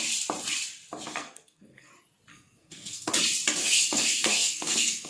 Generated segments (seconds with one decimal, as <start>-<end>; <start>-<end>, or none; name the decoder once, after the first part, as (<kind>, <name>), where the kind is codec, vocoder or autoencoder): 1.1-1.9 (codec, SNAC); 2.3-3.1; 3.6-5.1